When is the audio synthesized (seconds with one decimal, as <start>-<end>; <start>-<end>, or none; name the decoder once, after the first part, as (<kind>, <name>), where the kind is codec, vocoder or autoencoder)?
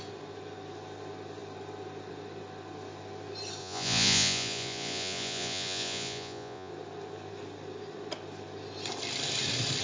3.6-6.7 (vocoder, Vocos)